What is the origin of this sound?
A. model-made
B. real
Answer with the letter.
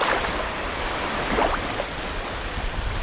B